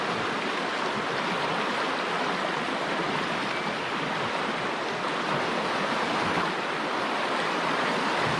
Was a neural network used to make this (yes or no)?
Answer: no